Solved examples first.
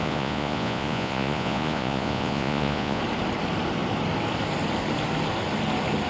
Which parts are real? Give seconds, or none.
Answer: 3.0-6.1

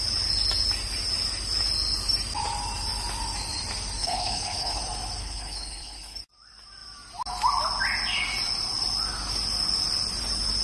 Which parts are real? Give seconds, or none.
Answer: 0.0-4.0; 4.8-5.2; 6.2-10.6

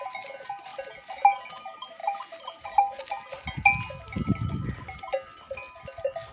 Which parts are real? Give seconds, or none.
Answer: 0.0-6.3